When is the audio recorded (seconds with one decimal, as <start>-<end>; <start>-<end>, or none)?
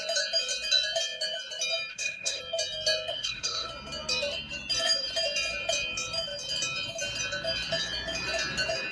0.0-1.9; 2.4-3.1; 3.7-8.9